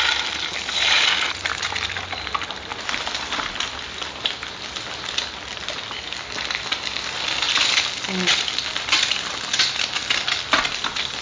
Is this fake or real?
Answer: real